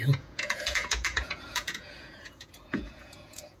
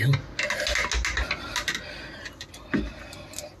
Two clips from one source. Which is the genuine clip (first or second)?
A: second